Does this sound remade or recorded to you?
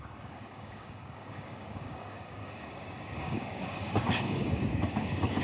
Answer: remade